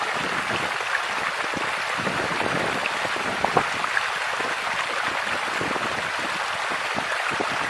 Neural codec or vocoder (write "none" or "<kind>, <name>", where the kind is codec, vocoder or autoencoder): none